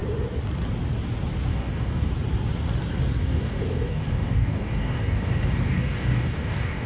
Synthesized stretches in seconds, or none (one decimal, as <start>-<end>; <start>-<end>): 1.5-2.1; 3.2-6.9